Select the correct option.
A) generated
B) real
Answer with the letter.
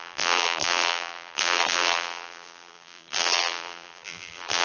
A